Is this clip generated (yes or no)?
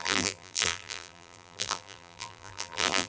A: yes